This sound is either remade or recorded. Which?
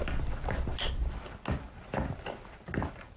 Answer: recorded